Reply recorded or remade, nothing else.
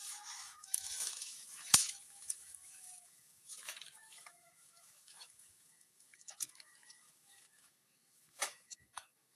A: remade